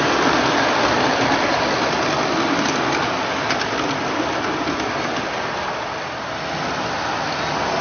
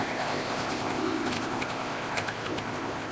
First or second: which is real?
first